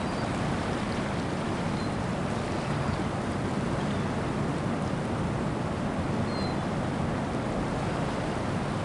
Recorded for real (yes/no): yes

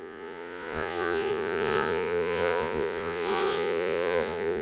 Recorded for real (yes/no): no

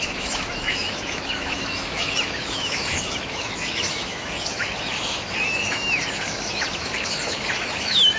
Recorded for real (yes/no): no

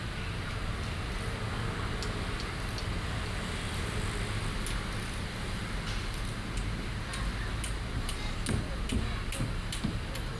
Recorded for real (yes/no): yes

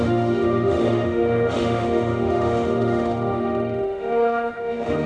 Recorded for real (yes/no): no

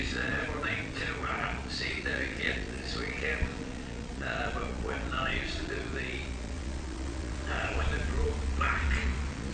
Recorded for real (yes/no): no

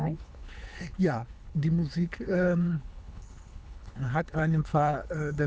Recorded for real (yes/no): no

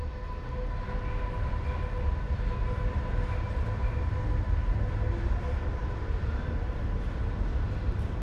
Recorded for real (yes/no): yes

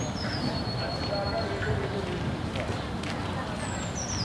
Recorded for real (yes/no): yes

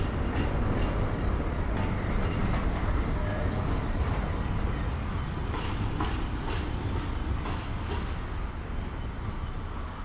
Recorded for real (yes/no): yes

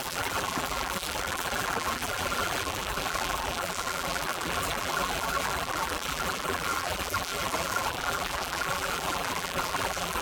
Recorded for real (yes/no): no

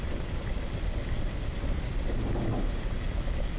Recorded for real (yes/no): yes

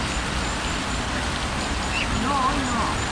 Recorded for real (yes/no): yes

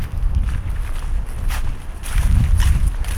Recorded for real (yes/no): no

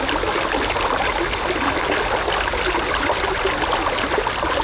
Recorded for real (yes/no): yes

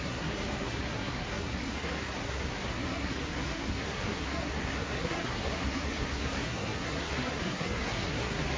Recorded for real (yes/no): no